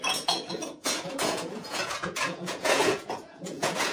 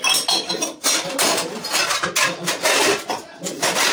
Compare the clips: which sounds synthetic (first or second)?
first